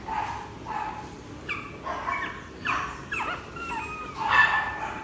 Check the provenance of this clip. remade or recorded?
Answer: recorded